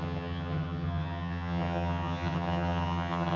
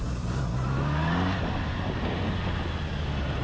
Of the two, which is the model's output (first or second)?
first